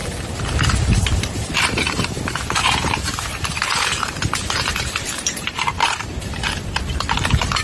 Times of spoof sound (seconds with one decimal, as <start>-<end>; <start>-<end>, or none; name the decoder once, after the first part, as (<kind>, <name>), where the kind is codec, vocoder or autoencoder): 0.0-7.6 (vocoder, BigVGAN v2)